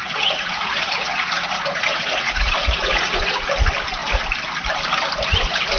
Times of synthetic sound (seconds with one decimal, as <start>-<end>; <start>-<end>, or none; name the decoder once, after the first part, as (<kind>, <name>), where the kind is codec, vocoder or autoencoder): 0.0-3.5 (vocoder, Vocos)